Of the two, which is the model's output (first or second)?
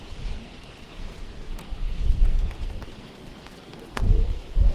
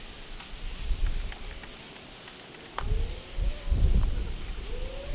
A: first